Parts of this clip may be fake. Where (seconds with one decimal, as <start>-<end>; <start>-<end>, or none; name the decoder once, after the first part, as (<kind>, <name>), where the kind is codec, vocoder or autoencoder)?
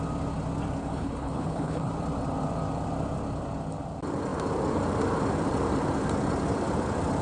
0.8-1.9 (codec, HILCodec)